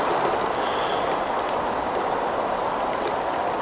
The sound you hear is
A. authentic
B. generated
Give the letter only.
A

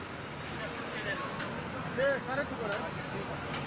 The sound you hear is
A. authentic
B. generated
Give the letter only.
A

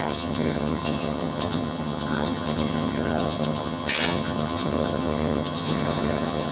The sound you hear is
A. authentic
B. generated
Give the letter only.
B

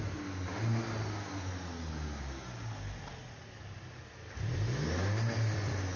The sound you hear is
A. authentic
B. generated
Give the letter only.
A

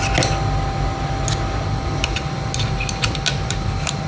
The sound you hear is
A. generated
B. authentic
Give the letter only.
B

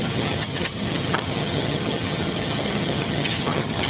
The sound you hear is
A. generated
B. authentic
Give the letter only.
A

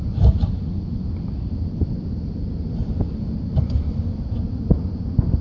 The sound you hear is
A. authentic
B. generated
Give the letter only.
A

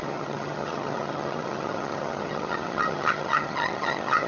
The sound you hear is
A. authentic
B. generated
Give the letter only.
B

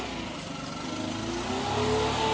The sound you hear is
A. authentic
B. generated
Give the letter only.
A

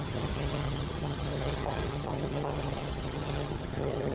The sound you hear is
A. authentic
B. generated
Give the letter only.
B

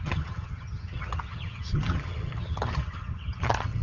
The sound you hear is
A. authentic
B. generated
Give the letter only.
B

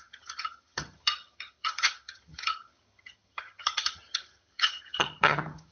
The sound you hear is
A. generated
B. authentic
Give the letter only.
A